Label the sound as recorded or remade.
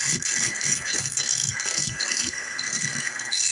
remade